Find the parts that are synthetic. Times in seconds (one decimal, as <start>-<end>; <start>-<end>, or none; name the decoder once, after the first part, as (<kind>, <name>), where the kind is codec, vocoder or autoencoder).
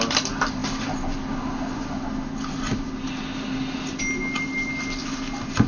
none